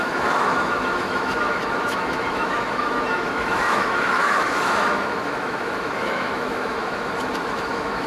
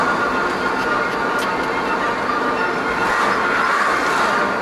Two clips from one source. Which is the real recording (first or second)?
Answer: second